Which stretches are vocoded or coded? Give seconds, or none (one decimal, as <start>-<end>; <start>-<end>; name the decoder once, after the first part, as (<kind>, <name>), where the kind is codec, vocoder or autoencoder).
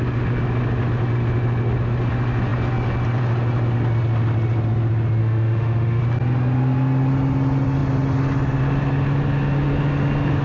5.2-6.0 (autoencoder, DAC-VAE)